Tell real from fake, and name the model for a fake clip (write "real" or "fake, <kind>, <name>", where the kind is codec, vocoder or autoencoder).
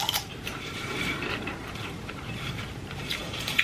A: fake, vocoder, BigVGAN v2